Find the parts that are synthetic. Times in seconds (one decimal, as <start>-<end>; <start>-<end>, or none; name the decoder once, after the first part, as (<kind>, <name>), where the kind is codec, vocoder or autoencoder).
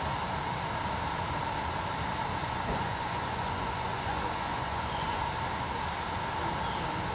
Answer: 2.4-5.2 (vocoder, Vocos)